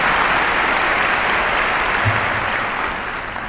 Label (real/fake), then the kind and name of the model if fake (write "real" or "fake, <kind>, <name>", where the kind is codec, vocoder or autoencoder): real